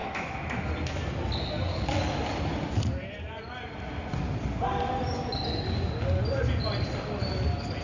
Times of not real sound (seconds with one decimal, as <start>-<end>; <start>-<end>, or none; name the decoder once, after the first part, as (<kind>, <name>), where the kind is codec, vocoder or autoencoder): 0.0-0.7 (autoencoder, DAC-VAE)